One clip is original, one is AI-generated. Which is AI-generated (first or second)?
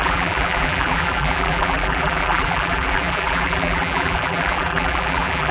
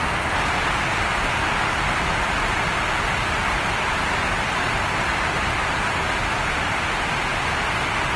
first